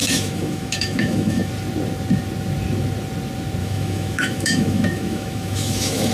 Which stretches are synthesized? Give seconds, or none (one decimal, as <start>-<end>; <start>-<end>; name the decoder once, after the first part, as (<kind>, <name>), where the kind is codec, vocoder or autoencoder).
0.0-1.5 (autoencoder, DAC-VAE); 3.6-6.1